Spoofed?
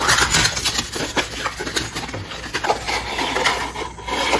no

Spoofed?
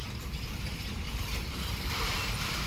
yes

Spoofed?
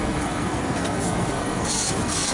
yes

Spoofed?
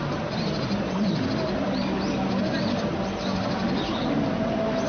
no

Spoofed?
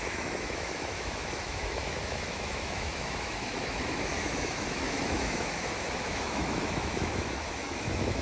yes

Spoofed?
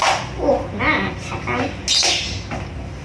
no